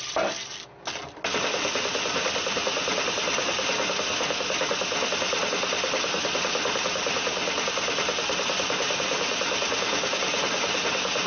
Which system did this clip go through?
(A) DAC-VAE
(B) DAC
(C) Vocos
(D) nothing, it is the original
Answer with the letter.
D